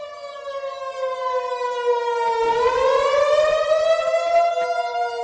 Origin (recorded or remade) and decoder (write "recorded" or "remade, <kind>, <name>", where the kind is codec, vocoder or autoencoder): recorded